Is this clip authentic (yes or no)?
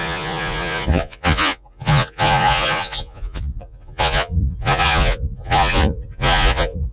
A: no